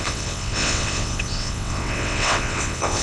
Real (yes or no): no